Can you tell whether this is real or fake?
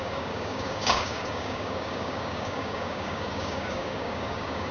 fake